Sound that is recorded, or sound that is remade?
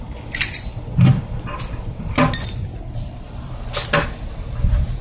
recorded